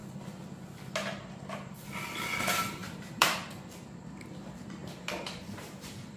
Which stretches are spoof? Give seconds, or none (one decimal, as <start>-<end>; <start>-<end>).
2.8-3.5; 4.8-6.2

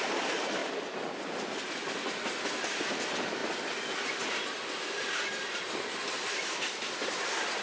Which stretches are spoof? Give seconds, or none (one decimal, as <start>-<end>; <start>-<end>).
none

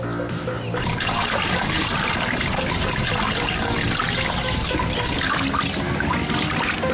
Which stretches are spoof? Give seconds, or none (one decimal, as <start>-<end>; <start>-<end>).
0.4-1.8

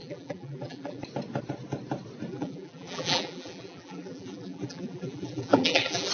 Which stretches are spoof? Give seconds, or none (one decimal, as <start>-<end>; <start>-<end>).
0.0-1.0; 2.3-6.1

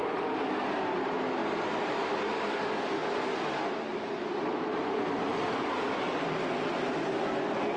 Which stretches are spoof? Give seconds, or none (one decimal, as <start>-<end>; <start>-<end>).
0.0-0.5; 1.4-1.9; 5.3-6.9

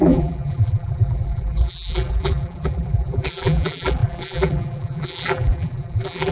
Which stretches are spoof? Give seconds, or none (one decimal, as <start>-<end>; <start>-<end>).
0.0-6.3

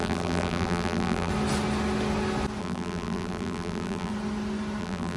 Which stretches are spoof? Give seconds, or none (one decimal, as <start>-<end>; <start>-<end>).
0.0-1.3; 2.6-4.1; 4.8-5.2

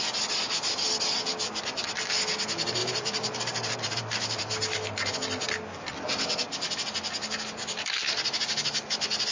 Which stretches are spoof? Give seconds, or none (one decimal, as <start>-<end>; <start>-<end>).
2.8-4.5